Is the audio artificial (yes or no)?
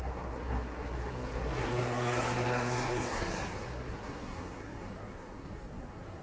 yes